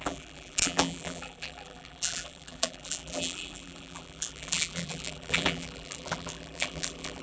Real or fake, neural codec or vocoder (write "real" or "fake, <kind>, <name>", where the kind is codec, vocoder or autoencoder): fake, vocoder, BigVGAN v2